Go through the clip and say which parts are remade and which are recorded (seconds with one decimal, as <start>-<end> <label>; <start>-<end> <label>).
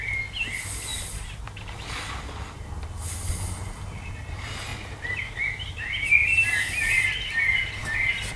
0.0-8.4 recorded